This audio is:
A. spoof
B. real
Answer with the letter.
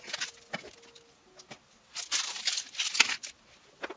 B